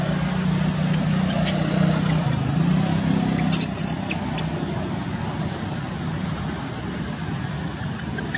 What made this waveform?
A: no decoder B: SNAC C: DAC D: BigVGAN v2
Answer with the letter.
A